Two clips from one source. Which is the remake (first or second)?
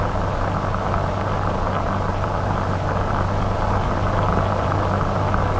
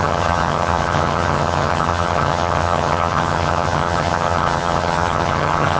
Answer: second